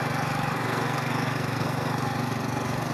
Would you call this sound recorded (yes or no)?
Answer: no